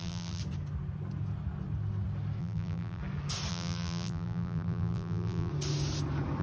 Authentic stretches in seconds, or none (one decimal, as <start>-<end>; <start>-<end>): 0.4-2.4; 3.0-3.5; 5.5-6.4